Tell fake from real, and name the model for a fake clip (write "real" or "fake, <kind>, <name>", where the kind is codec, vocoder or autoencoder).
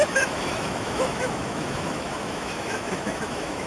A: fake, autoencoder, DAC-VAE